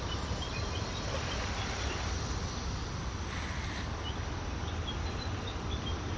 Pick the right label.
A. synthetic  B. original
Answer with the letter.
B